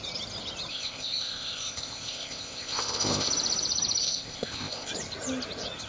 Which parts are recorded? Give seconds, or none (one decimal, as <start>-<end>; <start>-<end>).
0.0-0.7; 3.3-4.0; 4.9-5.9